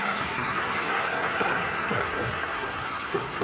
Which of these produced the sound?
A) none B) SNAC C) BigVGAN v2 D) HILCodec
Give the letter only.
B